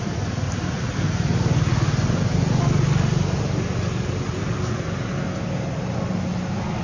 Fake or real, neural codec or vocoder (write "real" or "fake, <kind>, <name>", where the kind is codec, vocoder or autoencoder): real